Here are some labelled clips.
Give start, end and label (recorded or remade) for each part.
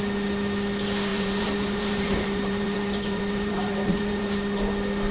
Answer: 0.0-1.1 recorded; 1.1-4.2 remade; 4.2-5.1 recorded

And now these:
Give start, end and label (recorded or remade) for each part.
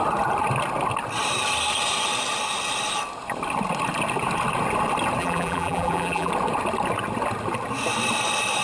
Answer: 0.0-5.2 recorded; 5.2-6.3 remade; 6.3-8.6 recorded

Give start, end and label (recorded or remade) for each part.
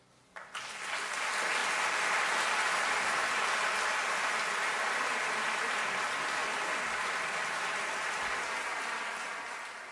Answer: 0.0-9.9 recorded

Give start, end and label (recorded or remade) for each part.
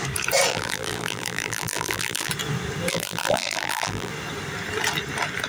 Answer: 0.0-0.5 recorded; 0.5-2.3 remade; 2.3-2.9 recorded; 2.9-4.1 remade; 4.1-5.5 recorded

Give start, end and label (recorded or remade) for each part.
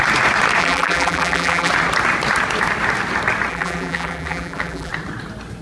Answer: 0.0-0.6 recorded; 0.6-1.7 remade; 1.7-3.5 recorded; 3.5-4.9 remade; 4.9-5.6 recorded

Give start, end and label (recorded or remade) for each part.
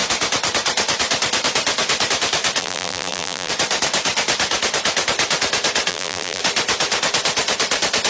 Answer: 0.0-2.6 recorded; 2.6-3.5 remade; 3.5-5.9 recorded; 5.9-6.4 remade; 6.4-8.1 recorded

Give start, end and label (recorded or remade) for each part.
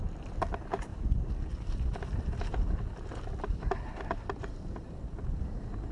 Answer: 0.0-0.9 remade; 0.9-2.9 recorded; 2.9-5.9 remade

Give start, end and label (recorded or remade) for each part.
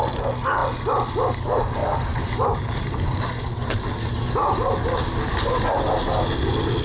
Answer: 0.0-1.8 recorded; 1.8-4.3 remade; 4.3-6.8 recorded